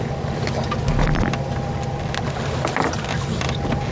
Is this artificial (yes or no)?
no